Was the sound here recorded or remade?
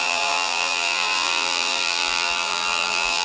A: remade